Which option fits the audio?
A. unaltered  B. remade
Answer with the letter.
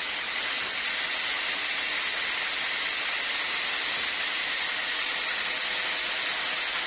A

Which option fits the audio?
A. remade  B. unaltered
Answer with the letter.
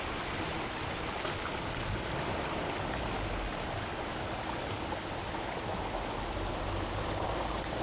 B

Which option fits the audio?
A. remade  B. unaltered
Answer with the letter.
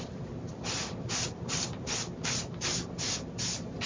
B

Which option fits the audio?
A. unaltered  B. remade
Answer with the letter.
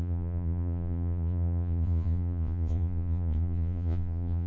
B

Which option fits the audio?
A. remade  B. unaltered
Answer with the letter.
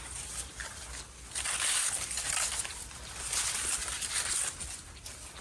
B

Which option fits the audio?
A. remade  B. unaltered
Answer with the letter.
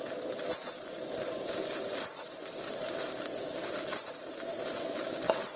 B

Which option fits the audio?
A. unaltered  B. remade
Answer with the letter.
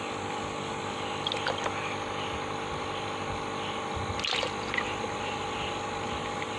A